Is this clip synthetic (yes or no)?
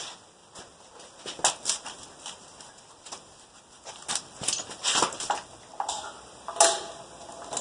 no